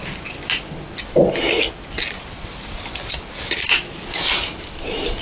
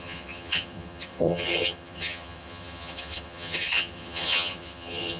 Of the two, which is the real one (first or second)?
first